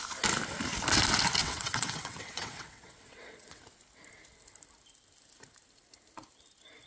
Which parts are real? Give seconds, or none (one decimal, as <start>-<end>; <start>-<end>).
0.0-1.4; 3.6-6.9